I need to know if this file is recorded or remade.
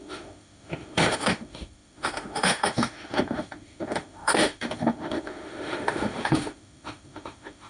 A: remade